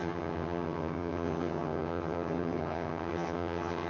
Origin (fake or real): fake